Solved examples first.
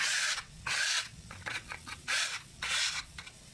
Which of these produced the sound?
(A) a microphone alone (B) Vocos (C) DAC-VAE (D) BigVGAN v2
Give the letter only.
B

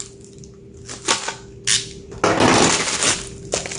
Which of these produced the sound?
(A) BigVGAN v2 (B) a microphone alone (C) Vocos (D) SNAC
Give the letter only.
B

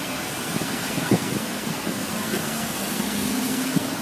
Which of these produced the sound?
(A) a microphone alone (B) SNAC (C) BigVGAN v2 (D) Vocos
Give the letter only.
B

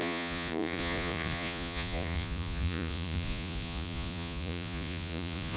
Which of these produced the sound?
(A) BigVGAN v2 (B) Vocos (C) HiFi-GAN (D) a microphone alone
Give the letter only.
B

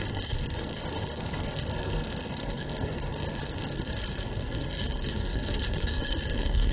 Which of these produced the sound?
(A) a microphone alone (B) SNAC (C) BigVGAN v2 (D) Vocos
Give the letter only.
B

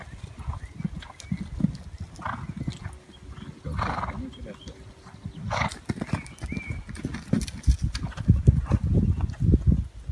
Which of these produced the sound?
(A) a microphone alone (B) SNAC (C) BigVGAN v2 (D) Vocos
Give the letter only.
A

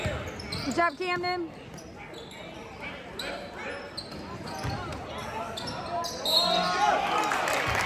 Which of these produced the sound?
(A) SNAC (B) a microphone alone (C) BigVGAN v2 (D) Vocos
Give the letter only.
B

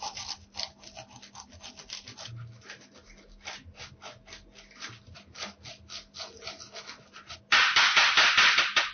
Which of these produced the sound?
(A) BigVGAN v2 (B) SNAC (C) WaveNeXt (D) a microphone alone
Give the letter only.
D